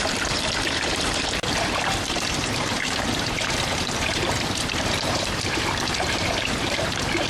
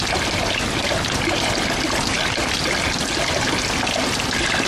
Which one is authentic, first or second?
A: second